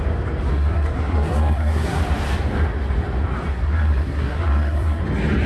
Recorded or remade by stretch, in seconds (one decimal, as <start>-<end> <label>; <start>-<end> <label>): 0.0-0.5 recorded; 0.5-2.0 remade; 2.0-3.5 recorded; 3.5-5.0 remade; 5.0-5.5 recorded